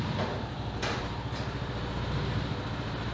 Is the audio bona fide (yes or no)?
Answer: yes